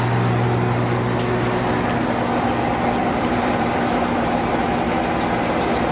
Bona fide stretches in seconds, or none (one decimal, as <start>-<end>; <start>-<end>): 0.0-3.0; 4.5-5.9